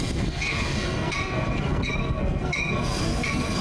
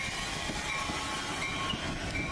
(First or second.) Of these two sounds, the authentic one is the second